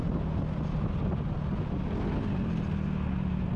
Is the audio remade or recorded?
recorded